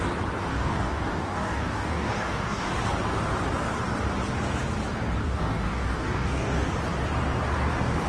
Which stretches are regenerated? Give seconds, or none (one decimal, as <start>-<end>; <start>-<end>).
0.5-2.7; 5.2-6.7